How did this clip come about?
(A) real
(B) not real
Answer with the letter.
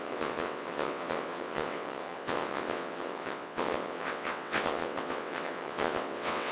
B